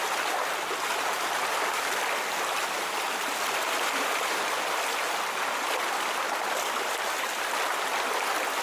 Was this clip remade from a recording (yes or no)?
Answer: no